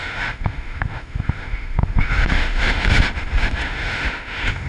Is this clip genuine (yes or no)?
no